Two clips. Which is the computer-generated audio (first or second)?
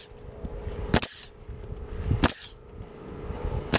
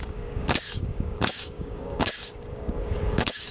second